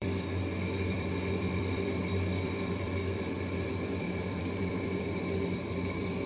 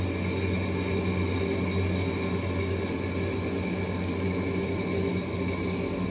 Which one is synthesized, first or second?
first